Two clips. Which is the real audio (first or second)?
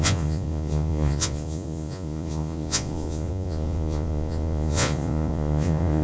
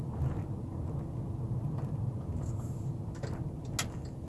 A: second